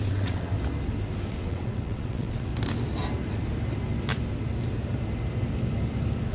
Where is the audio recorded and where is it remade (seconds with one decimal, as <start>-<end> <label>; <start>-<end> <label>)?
0.0-0.5 remade; 0.5-1.3 recorded; 1.3-2.5 remade; 2.5-6.3 recorded